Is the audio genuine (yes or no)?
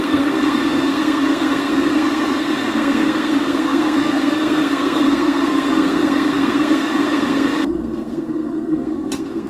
no